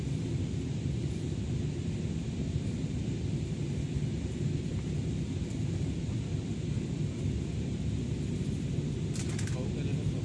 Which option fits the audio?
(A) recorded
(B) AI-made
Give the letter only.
A